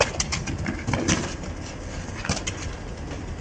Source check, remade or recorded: recorded